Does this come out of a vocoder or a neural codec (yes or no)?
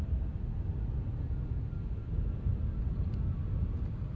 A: no